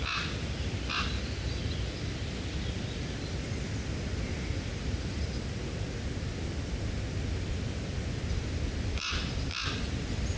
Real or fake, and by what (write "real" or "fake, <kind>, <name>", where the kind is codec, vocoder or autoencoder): real